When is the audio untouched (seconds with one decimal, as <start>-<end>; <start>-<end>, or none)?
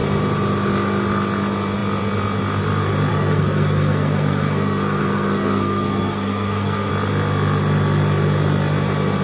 0.0-3.1; 6.9-9.2